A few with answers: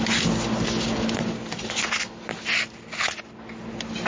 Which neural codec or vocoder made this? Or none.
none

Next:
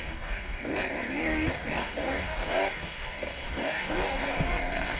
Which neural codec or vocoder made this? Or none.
codec, DAC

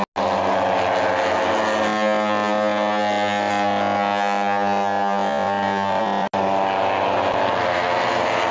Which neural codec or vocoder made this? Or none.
none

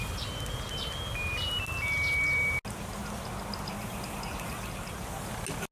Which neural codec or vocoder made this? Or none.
none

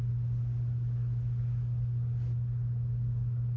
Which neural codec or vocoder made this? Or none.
none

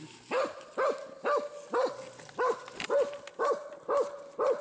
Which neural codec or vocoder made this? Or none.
none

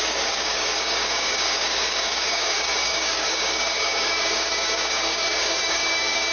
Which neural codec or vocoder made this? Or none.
codec, DAC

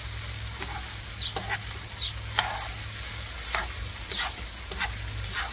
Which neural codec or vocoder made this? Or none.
none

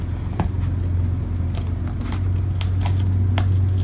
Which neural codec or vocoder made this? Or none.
none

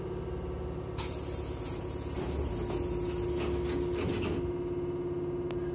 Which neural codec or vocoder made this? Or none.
none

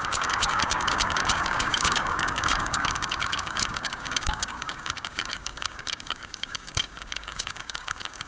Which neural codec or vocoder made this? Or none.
codec, DAC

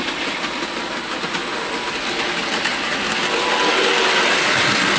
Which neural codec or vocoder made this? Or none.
none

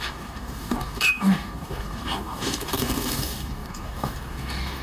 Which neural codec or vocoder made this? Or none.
codec, DAC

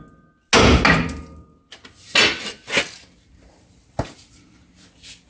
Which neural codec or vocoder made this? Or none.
none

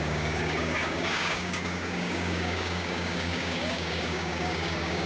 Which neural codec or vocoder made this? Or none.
codec, DAC